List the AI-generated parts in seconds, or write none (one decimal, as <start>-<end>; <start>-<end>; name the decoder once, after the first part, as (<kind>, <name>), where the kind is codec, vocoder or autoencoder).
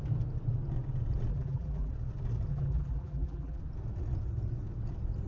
1.3-1.9 (vocoder, BigVGAN v2); 2.5-3.6